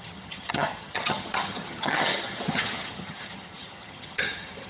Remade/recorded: remade